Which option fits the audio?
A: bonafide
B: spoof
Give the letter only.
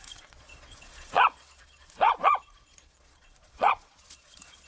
B